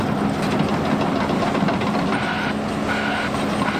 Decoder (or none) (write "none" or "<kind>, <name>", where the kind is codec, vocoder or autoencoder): none